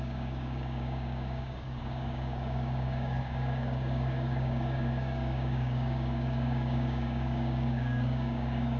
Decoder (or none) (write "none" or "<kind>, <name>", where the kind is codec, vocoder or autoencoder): codec, DAC